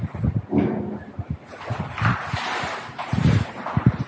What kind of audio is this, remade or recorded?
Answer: remade